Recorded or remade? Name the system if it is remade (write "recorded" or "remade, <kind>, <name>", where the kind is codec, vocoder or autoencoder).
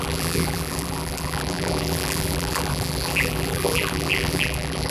remade, vocoder, BigVGAN v2